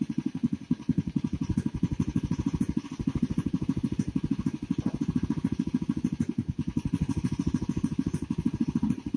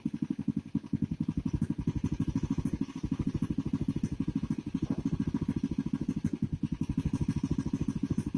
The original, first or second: second